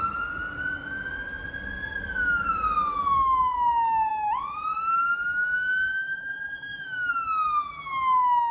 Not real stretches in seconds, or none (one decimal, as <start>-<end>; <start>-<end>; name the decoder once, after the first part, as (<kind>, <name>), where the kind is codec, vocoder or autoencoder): 2.9-3.5 (autoencoder, DAC-VAE); 4.1-7.1